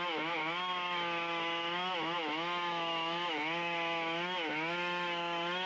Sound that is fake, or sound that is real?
fake